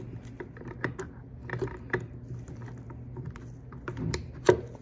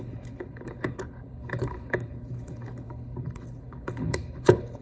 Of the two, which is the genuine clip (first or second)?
first